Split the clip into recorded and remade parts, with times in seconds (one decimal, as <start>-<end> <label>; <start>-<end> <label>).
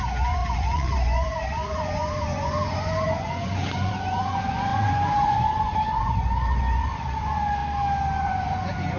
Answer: 0.0-7.6 remade; 7.6-8.2 recorded; 8.2-9.0 remade